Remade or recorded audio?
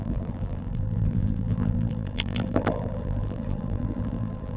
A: remade